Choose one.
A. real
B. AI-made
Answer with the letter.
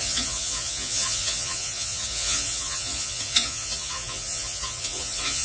B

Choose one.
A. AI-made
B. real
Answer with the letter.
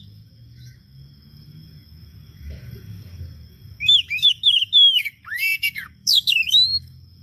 A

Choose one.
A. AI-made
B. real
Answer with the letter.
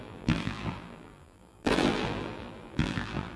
A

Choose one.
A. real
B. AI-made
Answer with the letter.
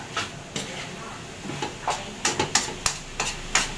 A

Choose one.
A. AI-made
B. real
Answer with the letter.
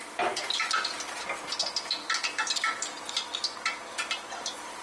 B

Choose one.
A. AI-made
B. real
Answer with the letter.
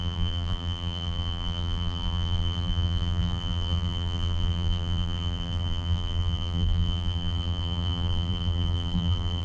A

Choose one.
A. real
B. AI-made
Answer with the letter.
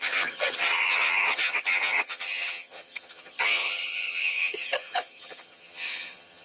B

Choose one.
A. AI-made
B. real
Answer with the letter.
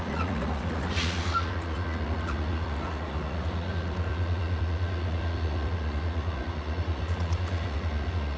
A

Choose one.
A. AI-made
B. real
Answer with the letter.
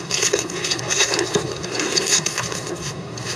A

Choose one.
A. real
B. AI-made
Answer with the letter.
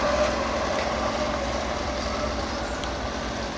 A